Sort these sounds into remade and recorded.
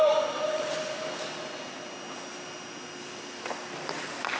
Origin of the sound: recorded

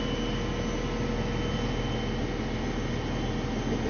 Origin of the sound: recorded